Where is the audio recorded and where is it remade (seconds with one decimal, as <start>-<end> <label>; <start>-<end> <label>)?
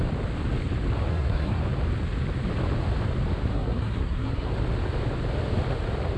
0.0-1.1 recorded; 1.1-1.6 remade; 1.6-3.5 recorded; 3.5-4.5 remade; 4.5-6.2 recorded